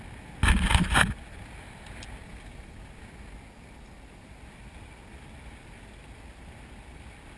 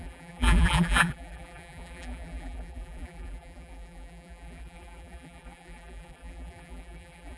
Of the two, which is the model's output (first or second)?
second